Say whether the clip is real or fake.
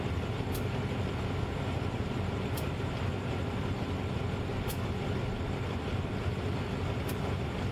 real